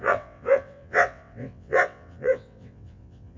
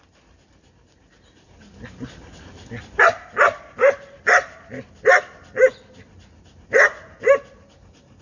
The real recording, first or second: second